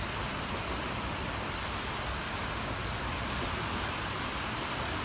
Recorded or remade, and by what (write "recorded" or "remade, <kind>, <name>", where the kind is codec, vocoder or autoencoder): recorded